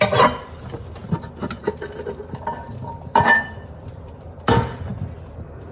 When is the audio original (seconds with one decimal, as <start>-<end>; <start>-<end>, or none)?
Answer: 0.0-1.4; 3.9-5.7